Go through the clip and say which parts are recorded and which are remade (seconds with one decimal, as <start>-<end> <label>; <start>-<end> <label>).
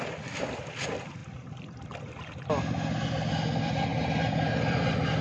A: 0.0-5.2 recorded